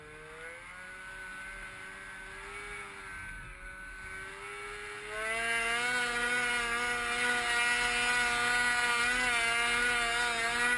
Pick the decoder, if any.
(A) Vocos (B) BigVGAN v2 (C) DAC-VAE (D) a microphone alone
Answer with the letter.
D